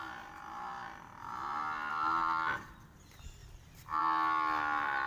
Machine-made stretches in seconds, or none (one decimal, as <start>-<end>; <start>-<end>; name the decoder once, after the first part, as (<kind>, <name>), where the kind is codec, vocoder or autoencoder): none